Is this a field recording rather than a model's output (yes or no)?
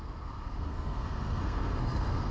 no